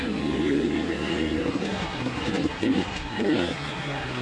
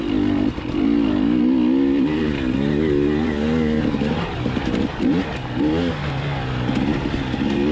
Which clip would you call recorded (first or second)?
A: second